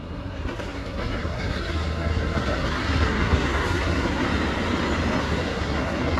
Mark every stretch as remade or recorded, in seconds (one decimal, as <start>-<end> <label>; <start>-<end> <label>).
0.0-4.3 remade; 4.3-5.2 recorded; 5.2-6.2 remade